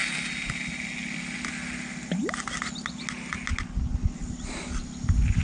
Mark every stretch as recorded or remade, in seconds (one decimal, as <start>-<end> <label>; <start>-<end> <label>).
0.0-0.9 remade; 0.9-5.4 recorded